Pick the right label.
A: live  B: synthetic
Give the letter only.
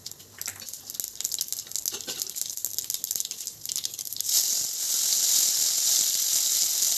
A